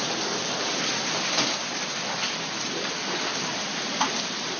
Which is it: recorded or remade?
recorded